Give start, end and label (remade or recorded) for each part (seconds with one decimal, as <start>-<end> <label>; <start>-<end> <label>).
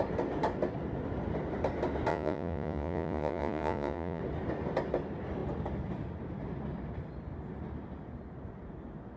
0.0-2.1 recorded; 2.1-4.2 remade; 4.2-9.2 recorded